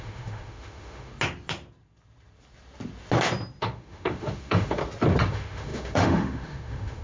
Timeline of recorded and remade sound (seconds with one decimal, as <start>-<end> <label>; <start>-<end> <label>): 0.0-1.1 remade; 1.1-3.6 recorded; 3.6-4.8 remade; 4.8-5.3 recorded; 5.3-7.0 remade